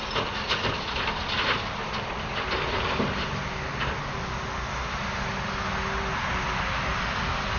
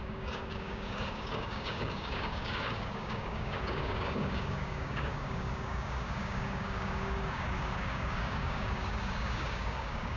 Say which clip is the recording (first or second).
first